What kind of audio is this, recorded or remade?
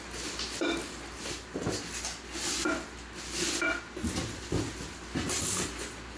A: recorded